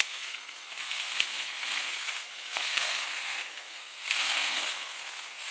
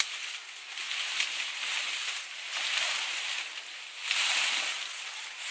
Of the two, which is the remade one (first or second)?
first